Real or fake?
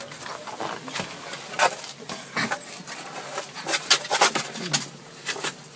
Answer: real